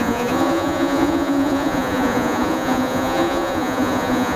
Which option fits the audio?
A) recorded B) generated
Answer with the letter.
B